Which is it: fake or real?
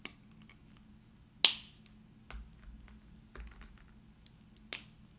real